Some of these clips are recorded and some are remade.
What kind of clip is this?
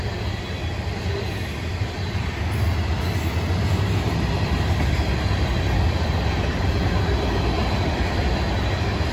recorded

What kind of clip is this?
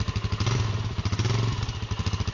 recorded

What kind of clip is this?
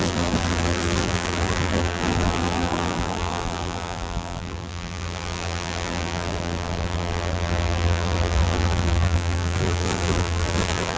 remade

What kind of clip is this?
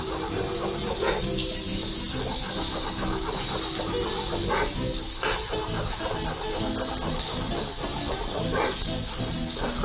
recorded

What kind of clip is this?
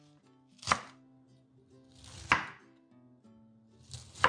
recorded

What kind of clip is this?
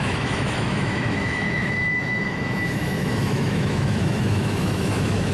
remade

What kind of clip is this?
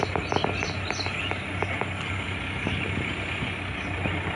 recorded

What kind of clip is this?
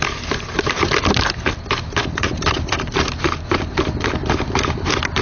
recorded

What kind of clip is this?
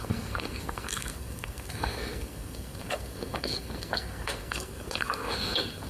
remade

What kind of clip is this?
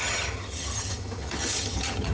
remade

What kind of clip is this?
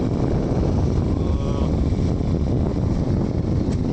recorded